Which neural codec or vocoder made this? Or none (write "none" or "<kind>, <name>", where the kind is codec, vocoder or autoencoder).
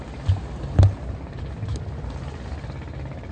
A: none